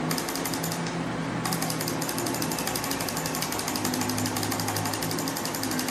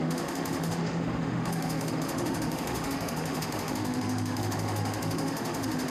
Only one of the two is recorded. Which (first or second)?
first